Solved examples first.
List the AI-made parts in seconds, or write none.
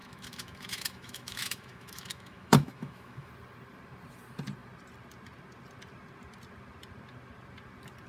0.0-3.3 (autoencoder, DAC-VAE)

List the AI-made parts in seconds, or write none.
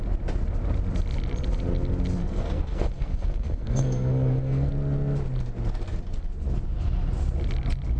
2.2-4.7 (codec, SNAC)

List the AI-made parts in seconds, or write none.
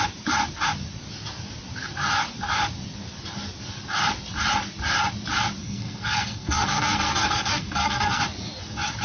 5.6-8.2 (codec, SNAC)